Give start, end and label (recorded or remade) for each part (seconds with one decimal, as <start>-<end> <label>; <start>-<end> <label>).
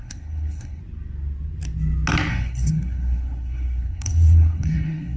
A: 0.0-0.8 remade; 0.8-2.3 recorded; 2.3-5.2 remade